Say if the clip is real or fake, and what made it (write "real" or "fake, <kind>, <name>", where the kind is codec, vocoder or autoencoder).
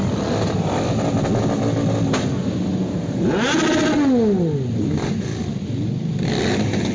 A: real